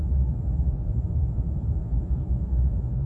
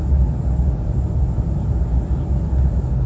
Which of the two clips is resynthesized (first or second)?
first